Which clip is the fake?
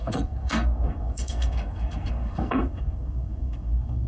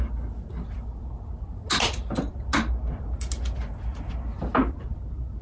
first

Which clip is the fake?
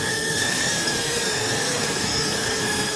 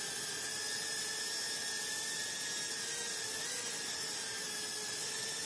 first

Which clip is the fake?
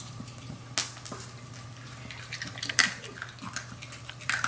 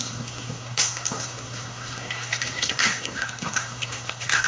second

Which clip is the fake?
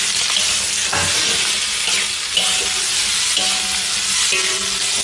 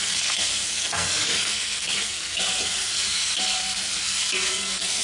second